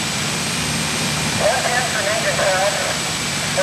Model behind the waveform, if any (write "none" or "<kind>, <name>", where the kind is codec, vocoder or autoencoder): vocoder, BigVGAN v2